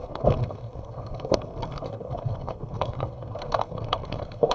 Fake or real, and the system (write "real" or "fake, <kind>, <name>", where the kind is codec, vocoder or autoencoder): fake, codec, SNAC